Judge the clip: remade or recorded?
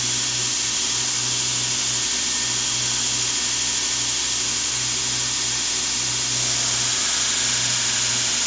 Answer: recorded